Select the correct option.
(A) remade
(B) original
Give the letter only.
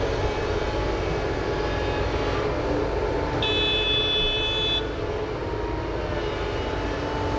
B